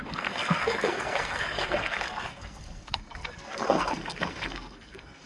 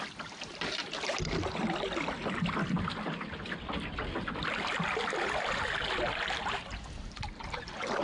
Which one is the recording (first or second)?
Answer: second